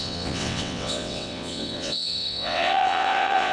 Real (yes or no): no